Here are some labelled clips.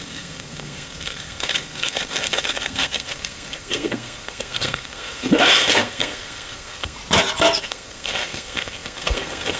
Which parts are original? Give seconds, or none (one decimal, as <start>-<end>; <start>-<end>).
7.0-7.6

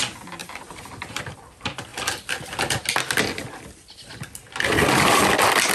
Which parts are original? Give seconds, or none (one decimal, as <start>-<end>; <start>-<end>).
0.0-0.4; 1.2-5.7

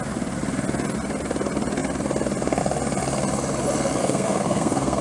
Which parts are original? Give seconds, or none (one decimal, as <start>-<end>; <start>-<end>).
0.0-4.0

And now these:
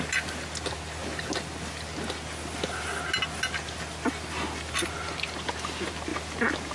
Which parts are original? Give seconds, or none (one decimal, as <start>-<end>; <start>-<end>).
0.0-6.7

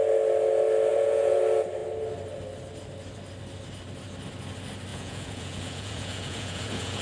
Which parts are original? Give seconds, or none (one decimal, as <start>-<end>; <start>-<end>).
0.0-0.9; 1.4-4.9